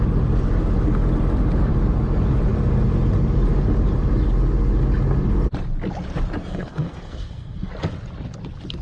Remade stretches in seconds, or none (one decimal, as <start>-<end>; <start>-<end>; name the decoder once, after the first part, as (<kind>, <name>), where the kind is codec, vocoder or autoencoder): 6.5-7.7 (codec, SNAC)